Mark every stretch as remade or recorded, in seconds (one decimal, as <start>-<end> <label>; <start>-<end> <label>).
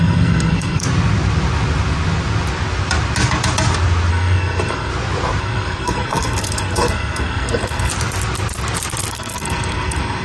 0.0-0.8 remade; 0.8-4.1 recorded; 4.1-4.9 remade; 4.9-5.4 recorded; 5.4-7.9 remade; 7.9-9.1 recorded; 9.1-10.2 remade